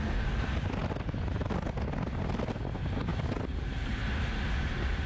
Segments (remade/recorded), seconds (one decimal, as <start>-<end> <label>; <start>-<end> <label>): 0.0-5.1 recorded